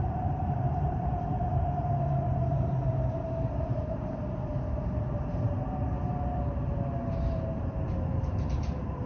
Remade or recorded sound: remade